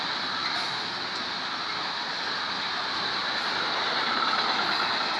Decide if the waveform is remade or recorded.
recorded